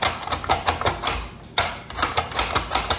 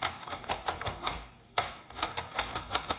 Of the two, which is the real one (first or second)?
first